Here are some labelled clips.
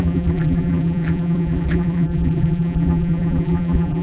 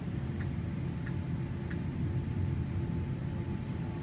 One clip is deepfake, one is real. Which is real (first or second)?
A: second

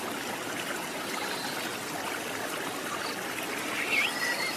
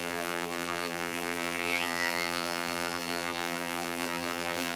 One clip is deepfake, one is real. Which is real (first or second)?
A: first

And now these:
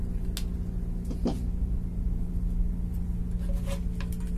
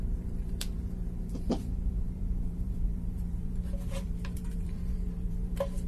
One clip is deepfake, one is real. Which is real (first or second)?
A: first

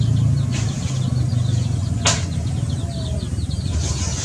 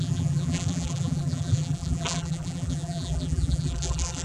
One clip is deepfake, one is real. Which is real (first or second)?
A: first